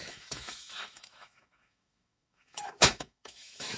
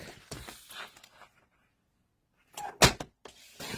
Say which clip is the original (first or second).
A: second